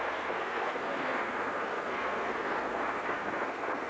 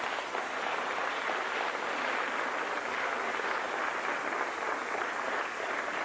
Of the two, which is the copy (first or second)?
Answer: first